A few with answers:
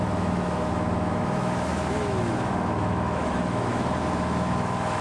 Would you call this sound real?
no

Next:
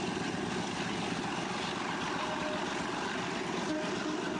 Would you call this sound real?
yes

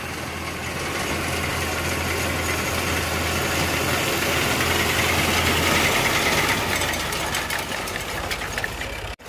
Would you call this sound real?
yes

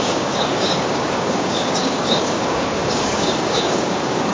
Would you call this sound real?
no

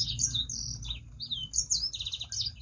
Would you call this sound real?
yes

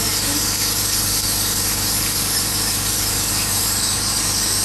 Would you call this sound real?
no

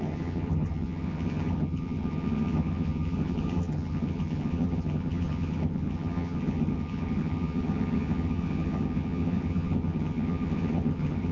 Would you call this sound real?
no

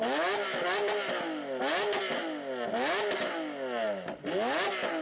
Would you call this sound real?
yes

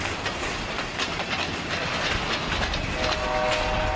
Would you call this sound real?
yes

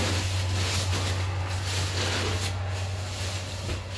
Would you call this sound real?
yes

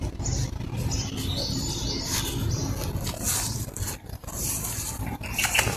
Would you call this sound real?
yes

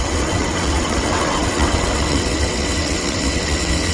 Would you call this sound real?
no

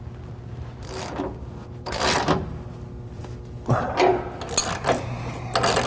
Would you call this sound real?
yes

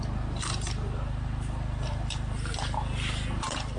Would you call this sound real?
yes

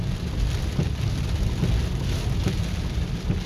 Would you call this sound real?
yes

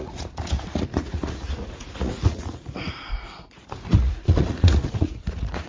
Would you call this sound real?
no